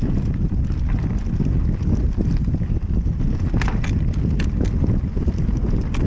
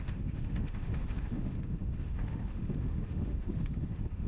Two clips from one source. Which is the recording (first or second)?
first